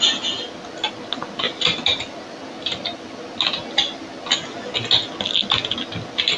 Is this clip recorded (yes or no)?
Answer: yes